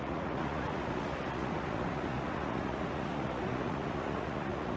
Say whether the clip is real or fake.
fake